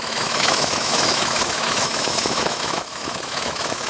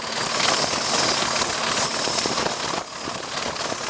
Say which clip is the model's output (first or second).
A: first